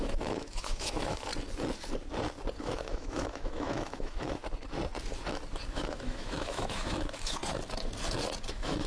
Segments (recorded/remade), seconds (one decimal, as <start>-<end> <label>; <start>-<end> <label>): 0.0-1.3 remade; 1.3-2.6 recorded; 2.6-4.4 remade; 4.4-5.7 recorded; 5.7-7.4 remade; 7.4-8.5 recorded; 8.5-8.9 remade